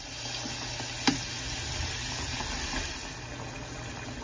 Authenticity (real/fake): real